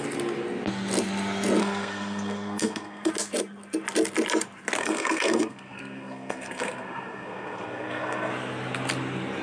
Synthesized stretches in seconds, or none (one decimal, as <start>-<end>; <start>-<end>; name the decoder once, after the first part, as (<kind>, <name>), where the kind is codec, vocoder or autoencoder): 1.6-3.1 (codec, SNAC); 4.8-8.3

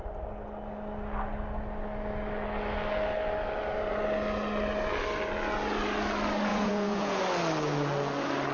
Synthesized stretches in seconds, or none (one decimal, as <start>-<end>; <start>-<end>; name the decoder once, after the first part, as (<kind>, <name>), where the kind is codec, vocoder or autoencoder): 6.5-7.2 (vocoder, Vocos)

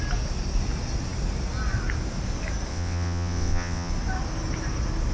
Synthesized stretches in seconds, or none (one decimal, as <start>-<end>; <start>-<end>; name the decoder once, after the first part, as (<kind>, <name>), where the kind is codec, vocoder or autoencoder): 2.7-3.9 (vocoder, WaveNeXt)

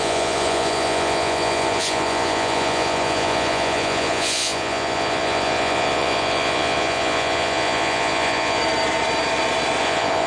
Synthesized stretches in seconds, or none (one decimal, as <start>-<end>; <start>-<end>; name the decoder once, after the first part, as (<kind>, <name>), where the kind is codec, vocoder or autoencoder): 0.0-8.6 (vocoder, Vocos); 9.8-10.3

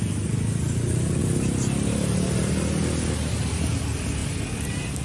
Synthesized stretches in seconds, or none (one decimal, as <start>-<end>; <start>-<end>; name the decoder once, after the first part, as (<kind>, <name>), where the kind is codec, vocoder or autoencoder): none

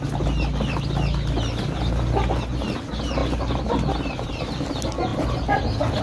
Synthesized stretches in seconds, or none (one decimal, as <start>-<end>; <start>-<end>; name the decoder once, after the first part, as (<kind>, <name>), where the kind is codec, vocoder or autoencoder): 5.1-5.6 (vocoder, BigVGAN v2)